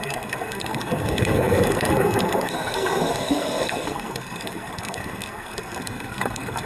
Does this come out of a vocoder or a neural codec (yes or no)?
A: yes